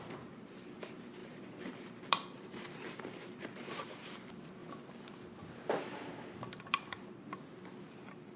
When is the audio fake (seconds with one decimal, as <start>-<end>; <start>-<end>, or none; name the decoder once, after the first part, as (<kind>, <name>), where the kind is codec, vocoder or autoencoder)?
0.0-4.6 (vocoder, BigVGAN v2); 6.5-8.4